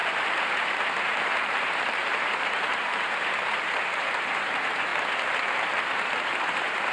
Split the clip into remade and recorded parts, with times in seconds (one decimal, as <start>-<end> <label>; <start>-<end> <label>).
0.0-4.9 remade; 4.9-6.4 recorded; 6.4-6.9 remade